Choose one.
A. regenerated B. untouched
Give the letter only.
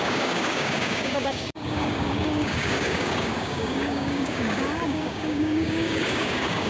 A